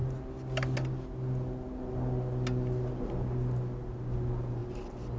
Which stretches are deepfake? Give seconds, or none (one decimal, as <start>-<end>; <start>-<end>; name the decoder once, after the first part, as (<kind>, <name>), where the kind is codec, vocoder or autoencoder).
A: none